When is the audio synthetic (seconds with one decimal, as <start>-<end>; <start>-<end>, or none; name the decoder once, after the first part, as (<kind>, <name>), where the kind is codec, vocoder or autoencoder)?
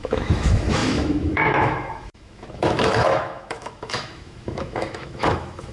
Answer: 0.0-5.7 (autoencoder, DAC-VAE)